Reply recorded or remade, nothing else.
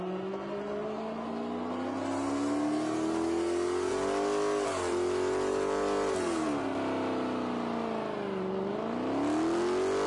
recorded